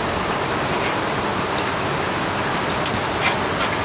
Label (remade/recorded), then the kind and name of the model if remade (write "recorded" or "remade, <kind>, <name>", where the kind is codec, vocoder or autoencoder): recorded